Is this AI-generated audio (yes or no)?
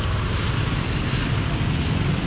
no